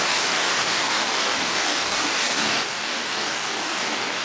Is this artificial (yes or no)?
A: yes